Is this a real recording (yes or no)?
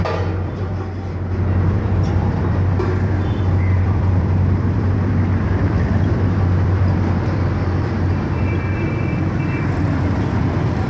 no